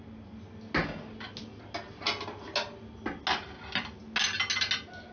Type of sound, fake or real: real